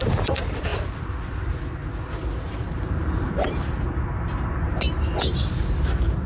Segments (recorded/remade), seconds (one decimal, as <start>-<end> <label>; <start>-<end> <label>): 0.0-6.3 recorded